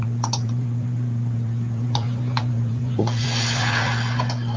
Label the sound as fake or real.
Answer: fake